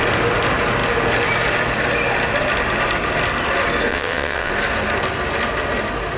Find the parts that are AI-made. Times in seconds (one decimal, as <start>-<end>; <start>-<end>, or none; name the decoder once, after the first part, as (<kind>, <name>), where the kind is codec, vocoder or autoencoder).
3.9-4.5 (vocoder, WaveNeXt)